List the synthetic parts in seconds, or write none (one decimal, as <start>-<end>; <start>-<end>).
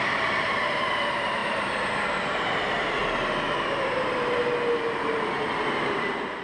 0.0-3.0; 5.8-6.4